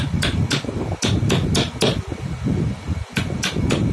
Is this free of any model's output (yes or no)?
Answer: yes